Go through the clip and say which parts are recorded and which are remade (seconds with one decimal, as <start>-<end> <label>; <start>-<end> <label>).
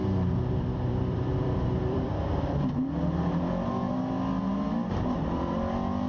0.0-2.1 remade; 2.1-6.1 recorded